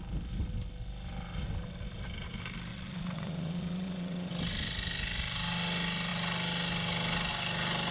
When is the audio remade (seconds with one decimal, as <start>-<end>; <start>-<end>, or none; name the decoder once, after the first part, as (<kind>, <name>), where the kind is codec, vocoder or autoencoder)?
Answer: 2.7-4.3 (vocoder, WaveNeXt)